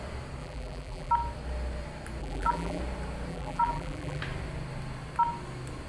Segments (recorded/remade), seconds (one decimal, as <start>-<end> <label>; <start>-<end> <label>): 0.0-0.4 recorded; 0.4-1.1 remade; 1.1-2.2 recorded; 2.2-2.8 remade; 2.8-3.3 recorded; 3.3-4.2 remade; 4.2-5.9 recorded